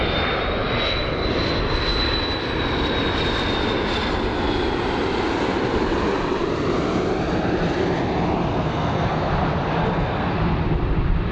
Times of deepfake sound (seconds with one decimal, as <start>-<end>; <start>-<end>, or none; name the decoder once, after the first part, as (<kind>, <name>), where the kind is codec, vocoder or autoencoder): 8.5-9.2 (codec, SNAC); 9.8-10.3